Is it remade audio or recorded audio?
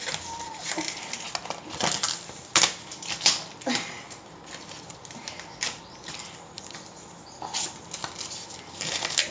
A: recorded